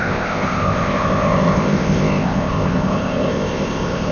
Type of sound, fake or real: fake